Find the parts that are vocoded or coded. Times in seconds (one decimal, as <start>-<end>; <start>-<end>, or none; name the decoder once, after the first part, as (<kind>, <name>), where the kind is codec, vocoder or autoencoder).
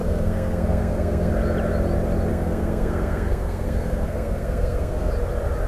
0.0-1.3 (codec, SNAC); 2.3-5.1